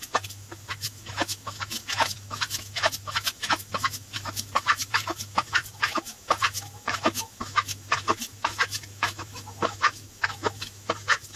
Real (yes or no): no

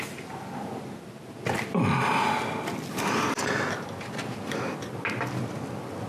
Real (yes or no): yes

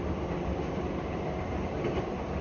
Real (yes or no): yes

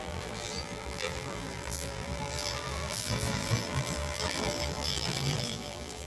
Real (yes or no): no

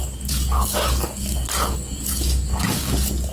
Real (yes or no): no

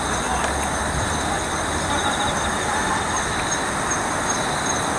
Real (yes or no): yes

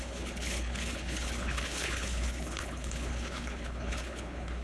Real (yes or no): no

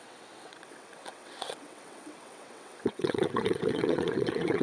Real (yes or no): no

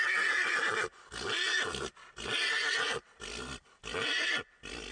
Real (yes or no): yes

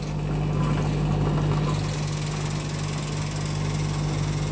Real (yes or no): yes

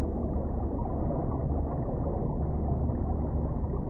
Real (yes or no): yes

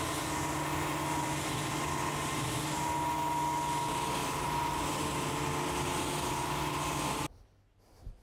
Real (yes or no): yes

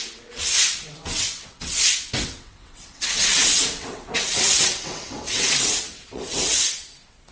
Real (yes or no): no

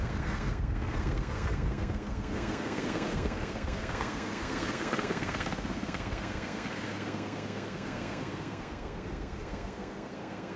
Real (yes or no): no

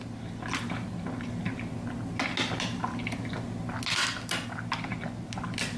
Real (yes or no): yes